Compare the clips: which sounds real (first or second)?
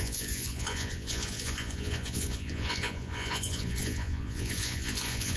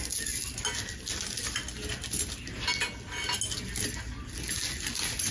second